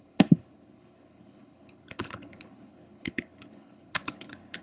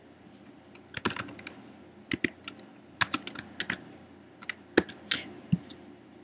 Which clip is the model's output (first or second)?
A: first